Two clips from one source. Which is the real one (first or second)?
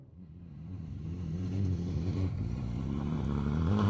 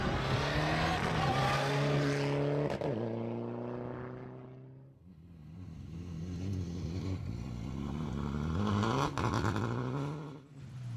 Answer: second